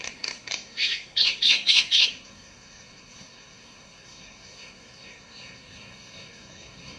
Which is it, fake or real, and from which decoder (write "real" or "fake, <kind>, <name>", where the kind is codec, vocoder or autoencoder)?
fake, codec, SNAC